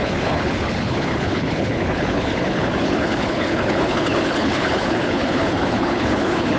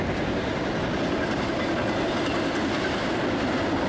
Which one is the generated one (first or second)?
first